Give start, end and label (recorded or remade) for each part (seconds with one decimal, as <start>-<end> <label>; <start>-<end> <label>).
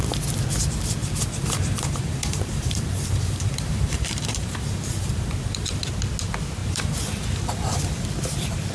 0.0-1.0 recorded; 1.0-5.8 remade; 5.8-6.6 recorded; 6.6-7.2 remade; 7.2-8.7 recorded